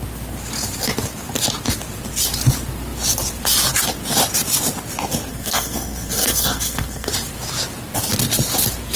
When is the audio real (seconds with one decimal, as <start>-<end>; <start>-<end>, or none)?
0.0-5.3; 7.1-9.0